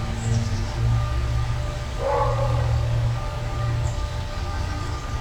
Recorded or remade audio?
remade